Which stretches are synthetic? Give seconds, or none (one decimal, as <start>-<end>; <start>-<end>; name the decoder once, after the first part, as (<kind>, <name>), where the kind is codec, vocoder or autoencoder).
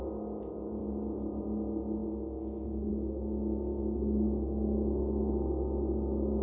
0.8-1.4 (vocoder, BigVGAN v2)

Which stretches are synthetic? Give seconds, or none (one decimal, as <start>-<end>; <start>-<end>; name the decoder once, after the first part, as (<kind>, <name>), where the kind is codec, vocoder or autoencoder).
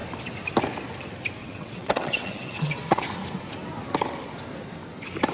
1.4-3.0 (vocoder, WaveNeXt)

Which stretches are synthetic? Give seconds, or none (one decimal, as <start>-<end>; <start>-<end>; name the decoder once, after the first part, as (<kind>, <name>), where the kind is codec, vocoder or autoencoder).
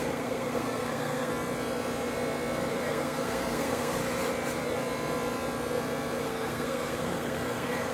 0.0-1.3 (codec, SNAC); 2.7-4.0; 6.2-7.9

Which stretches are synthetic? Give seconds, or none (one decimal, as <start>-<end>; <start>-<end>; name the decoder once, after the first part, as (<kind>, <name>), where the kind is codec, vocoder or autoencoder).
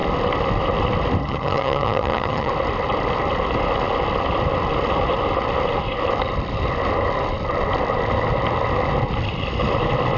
1.2-2.5 (vocoder, HiFi-GAN)